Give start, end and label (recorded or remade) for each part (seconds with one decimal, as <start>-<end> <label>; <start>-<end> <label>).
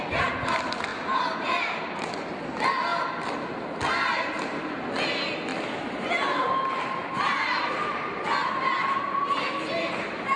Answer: 0.0-10.4 recorded